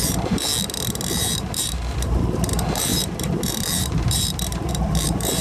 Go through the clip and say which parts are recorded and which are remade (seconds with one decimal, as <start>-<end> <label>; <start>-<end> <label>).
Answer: 0.0-0.5 remade; 0.5-1.1 recorded; 1.1-5.4 remade